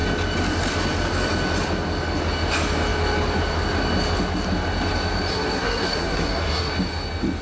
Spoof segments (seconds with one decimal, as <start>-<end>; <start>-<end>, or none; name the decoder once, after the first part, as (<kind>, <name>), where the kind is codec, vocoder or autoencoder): 5.3-6.7 (codec, SNAC)